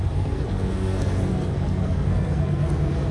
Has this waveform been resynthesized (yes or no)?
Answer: yes